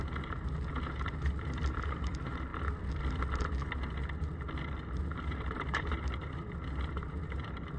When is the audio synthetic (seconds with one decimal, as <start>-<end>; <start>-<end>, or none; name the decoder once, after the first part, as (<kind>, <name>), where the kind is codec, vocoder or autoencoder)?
0.0-2.5 (vocoder, BigVGAN v2); 5.0-7.8